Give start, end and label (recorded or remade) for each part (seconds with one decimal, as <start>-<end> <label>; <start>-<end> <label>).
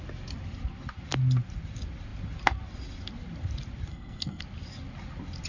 0.0-3.9 recorded; 3.9-4.4 remade; 4.4-5.5 recorded